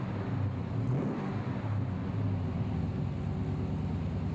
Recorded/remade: recorded